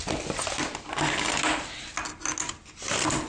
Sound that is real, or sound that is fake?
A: real